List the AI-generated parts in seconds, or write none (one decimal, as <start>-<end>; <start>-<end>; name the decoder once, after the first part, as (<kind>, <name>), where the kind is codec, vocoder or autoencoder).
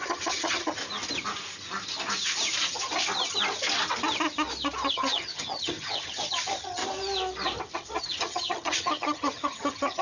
0.0-0.8 (vocoder, HiFi-GAN); 4.9-6.8; 8.0-10.0